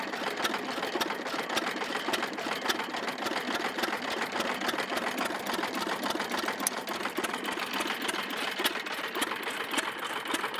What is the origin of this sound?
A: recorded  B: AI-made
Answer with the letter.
A